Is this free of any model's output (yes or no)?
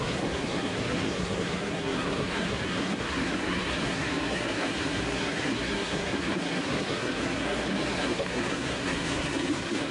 no